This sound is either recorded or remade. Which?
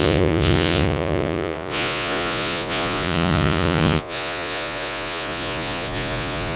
remade